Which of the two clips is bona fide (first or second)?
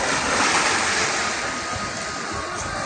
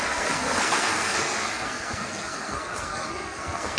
first